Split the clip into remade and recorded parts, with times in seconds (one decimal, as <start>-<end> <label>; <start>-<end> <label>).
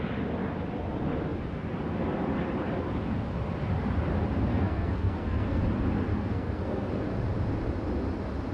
0.0-4.5 recorded; 4.5-5.6 remade; 5.6-6.1 recorded; 6.1-6.9 remade; 6.9-8.5 recorded